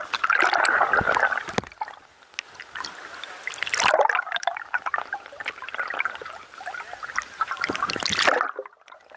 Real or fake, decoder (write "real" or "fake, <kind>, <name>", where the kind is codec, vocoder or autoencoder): real